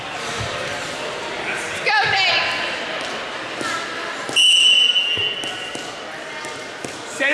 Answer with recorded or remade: recorded